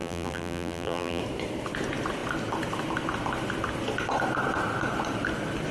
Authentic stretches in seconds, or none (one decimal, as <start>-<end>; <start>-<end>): 1.2-5.7